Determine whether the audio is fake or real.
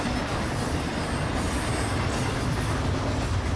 real